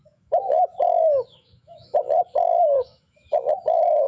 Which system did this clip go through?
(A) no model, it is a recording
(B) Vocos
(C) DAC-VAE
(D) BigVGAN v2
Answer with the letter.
C